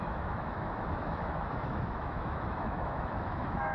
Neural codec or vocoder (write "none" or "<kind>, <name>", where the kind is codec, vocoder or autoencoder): autoencoder, DAC-VAE